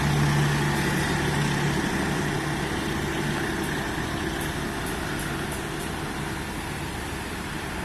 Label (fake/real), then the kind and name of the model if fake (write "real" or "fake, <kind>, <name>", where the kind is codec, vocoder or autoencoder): real